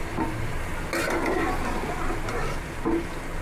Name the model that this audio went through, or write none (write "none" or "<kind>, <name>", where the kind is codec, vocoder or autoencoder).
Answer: none